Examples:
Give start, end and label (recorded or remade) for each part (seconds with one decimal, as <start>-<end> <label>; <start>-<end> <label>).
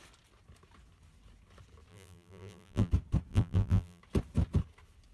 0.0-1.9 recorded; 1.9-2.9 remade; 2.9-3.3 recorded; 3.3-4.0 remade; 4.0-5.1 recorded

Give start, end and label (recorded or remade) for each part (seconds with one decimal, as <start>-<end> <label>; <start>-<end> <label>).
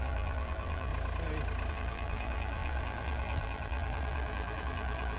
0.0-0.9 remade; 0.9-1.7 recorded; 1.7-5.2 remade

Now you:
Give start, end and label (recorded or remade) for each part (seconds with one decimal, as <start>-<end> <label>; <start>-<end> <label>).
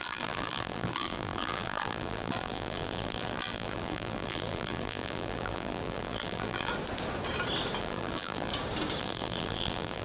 0.0-6.7 remade; 6.7-7.8 recorded; 7.8-8.5 remade; 8.5-9.0 recorded; 9.0-10.0 remade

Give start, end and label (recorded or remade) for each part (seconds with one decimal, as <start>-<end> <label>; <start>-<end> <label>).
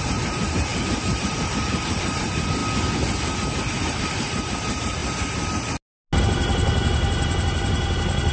0.0-0.7 remade; 0.7-1.2 recorded; 1.2-2.6 remade; 2.6-3.8 recorded; 3.8-5.0 remade; 5.0-6.2 recorded; 6.2-8.3 remade